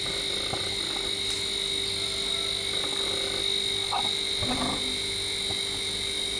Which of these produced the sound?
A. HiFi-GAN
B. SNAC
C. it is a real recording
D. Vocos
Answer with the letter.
C